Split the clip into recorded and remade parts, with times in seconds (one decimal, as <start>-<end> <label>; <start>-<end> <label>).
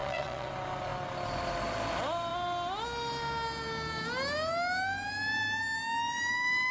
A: 0.0-0.5 remade; 0.5-6.7 recorded